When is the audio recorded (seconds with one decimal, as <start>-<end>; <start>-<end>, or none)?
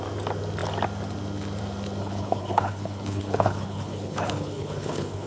0.0-2.0